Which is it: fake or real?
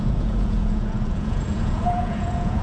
fake